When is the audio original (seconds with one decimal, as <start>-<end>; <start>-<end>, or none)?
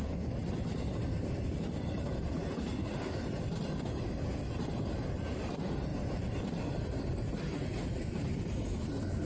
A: 0.0-9.3